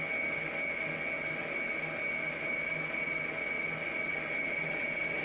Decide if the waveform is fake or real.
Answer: real